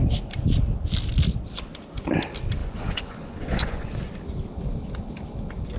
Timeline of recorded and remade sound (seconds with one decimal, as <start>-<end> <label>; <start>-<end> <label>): 0.0-2.6 recorded; 2.6-4.1 remade; 4.1-5.8 recorded